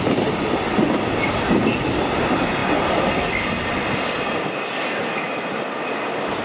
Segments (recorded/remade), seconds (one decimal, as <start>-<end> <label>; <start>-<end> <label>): 0.0-6.4 recorded